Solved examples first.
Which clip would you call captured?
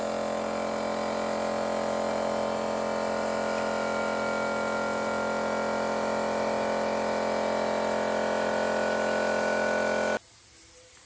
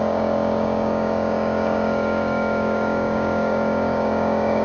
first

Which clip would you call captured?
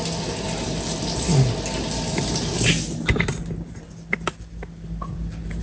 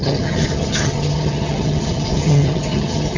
first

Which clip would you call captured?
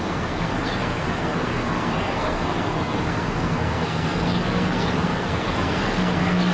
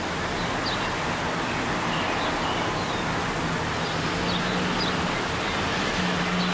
second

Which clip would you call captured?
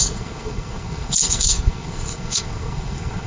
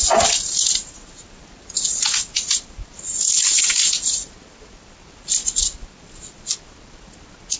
second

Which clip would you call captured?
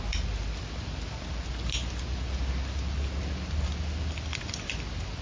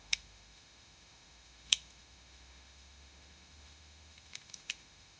first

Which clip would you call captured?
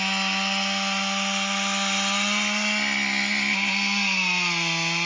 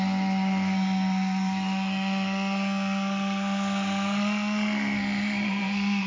first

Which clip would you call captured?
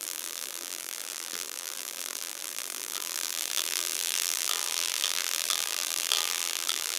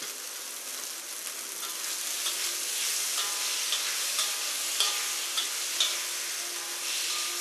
second